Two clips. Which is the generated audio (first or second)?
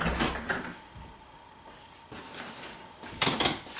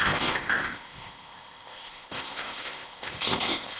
second